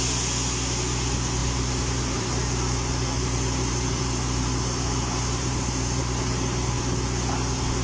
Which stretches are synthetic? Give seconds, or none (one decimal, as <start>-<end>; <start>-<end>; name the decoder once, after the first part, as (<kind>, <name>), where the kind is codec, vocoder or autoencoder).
1.4-6.0 (vocoder, BigVGAN v2)